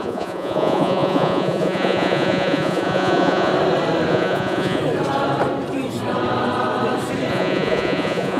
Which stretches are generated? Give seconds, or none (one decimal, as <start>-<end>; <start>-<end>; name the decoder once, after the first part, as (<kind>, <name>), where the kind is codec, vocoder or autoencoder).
0.0-3.5 (vocoder, Vocos); 4.1-4.8; 7.3-8.4